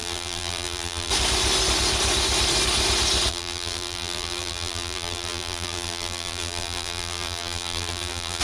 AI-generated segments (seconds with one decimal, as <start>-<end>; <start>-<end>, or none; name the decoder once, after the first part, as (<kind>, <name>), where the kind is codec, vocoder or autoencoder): 0.0-1.1 (vocoder, BigVGAN v2); 3.3-8.4